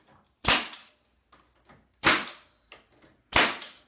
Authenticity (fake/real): real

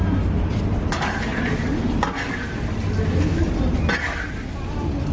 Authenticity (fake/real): real